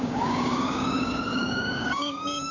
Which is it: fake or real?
fake